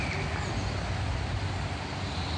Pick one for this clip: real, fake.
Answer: real